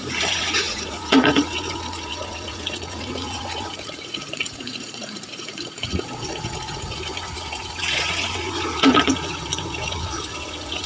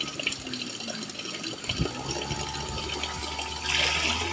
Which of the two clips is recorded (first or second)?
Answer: second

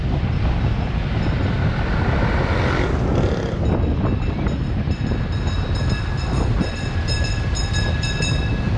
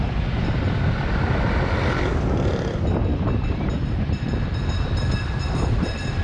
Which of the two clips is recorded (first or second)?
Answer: first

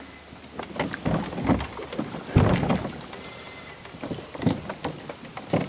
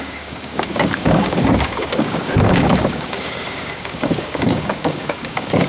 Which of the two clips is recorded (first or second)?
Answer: first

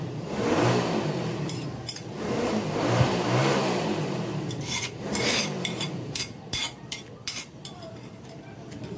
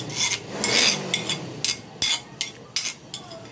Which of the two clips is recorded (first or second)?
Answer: second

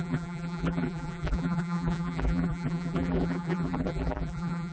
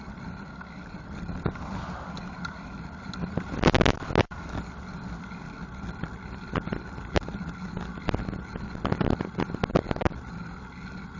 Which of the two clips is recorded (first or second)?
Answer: second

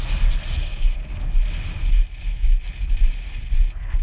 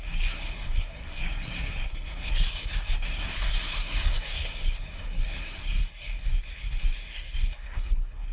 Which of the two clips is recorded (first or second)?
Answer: first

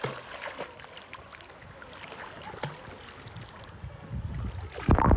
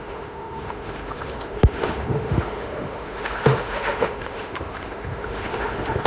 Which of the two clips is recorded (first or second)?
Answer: first